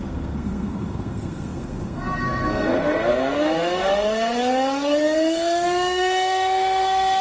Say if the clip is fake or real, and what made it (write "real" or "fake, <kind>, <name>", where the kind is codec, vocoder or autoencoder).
fake, codec, SNAC